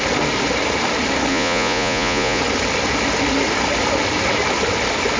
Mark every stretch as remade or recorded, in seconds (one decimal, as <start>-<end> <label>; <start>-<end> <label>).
0.0-1.3 recorded; 1.3-2.4 remade; 2.4-5.2 recorded